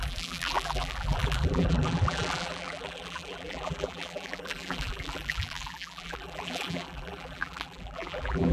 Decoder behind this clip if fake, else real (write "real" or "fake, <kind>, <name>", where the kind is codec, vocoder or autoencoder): fake, vocoder, BigVGAN v2